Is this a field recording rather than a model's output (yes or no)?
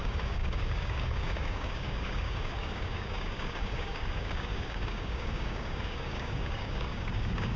no